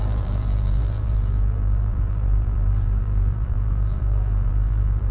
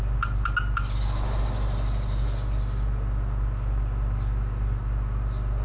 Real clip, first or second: second